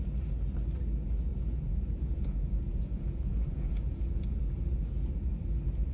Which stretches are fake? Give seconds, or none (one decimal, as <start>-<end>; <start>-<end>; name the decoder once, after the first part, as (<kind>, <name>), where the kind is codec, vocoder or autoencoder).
1.3-4.8 (vocoder, Vocos)